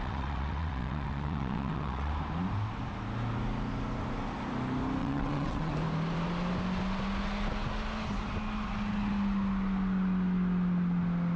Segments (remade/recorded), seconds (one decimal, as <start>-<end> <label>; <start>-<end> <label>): 0.0-2.1 remade; 2.1-5.0 recorded; 5.0-5.7 remade; 5.7-11.4 recorded